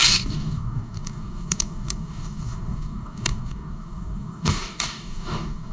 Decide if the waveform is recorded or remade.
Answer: remade